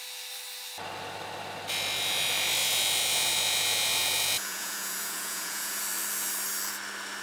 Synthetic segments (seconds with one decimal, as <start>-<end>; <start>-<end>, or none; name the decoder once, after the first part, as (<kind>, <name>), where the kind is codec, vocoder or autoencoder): 2.6-5.8 (vocoder, Vocos)

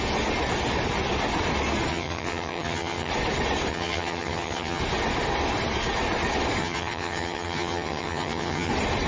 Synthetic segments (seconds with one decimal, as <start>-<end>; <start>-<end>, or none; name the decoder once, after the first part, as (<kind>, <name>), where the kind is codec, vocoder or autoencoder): 1.9-3.1 (vocoder, HiFi-GAN); 3.7-4.8; 6.6-8.7

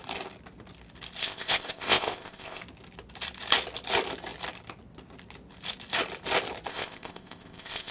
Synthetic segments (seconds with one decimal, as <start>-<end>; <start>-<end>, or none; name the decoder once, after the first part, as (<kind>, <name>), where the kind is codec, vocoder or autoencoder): 1.2-2.6 (codec, ZipCodec); 6.7-7.9